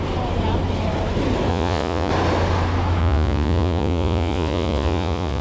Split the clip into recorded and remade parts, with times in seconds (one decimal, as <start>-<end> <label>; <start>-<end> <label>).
0.0-1.5 recorded; 1.5-2.1 remade; 2.1-3.0 recorded; 3.0-5.4 remade